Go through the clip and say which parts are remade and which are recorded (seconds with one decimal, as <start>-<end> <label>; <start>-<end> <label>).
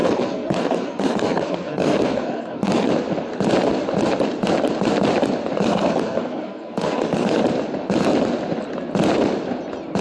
0.0-2.9 remade; 2.9-5.7 recorded; 5.7-7.4 remade; 7.4-10.0 recorded